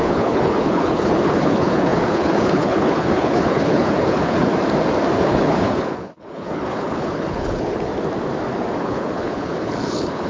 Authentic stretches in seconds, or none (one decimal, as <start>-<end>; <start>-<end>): 4.5-5.2; 7.9-8.8